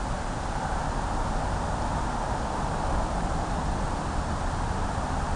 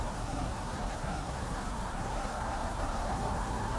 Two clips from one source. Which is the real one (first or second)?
first